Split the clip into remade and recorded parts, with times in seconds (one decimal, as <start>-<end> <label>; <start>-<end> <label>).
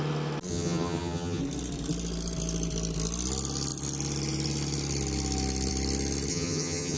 0.0-0.5 recorded; 0.5-1.4 remade; 1.4-6.3 recorded; 6.3-7.0 remade